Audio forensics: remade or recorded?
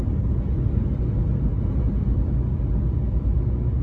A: recorded